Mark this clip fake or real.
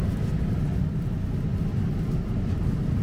real